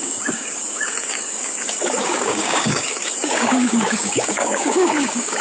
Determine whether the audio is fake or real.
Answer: fake